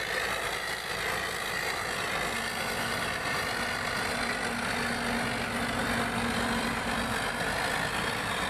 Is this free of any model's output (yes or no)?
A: yes